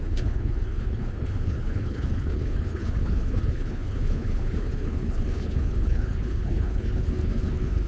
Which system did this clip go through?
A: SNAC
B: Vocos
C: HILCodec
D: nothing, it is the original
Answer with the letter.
C